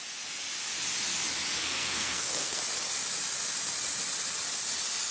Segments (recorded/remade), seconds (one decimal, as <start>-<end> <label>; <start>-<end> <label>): 0.0-1.6 recorded; 1.6-2.6 remade; 2.6-5.1 recorded